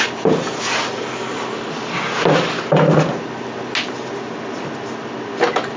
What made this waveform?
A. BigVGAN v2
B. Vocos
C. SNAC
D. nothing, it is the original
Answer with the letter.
D